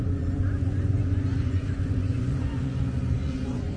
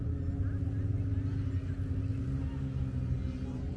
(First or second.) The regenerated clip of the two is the first